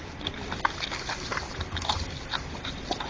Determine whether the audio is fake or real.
real